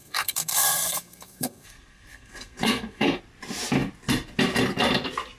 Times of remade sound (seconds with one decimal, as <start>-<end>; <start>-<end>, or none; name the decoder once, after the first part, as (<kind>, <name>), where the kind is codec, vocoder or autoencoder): 0.0-3.2 (codec, SNAC)